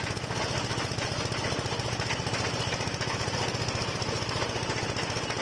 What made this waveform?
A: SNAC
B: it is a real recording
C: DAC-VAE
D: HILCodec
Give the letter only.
B